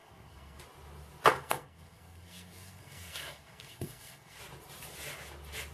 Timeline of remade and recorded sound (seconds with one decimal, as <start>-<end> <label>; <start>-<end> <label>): 0.0-0.6 remade; 0.6-1.3 recorded; 1.3-4.4 remade; 4.4-5.7 recorded